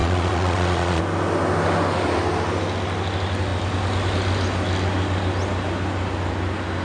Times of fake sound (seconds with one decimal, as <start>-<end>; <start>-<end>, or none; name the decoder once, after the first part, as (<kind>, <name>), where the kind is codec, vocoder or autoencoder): 0.0-1.0 (vocoder, Vocos)